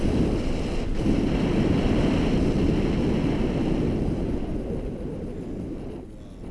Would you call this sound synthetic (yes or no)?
no